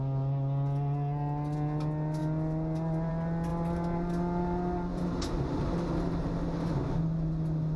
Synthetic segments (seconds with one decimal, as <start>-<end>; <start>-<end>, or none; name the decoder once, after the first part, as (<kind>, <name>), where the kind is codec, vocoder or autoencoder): none

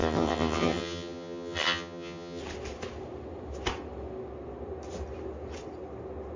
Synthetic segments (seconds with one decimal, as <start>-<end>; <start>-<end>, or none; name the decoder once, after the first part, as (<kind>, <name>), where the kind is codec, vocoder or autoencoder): 0.0-2.4 (vocoder, HiFi-GAN)